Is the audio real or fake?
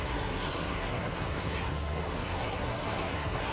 fake